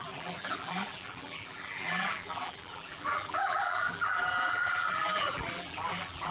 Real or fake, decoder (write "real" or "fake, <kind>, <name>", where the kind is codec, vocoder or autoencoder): fake, vocoder, BigVGAN v2